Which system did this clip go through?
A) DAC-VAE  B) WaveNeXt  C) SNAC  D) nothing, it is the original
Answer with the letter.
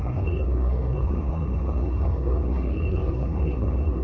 C